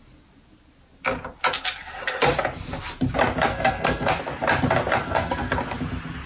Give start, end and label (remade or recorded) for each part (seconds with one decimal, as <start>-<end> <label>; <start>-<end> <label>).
0.0-3.5 recorded; 3.5-4.1 remade; 4.1-5.0 recorded; 5.0-5.5 remade; 5.5-6.3 recorded